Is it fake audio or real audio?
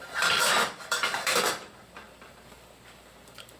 fake